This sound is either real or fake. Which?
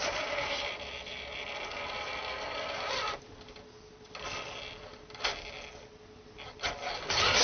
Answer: real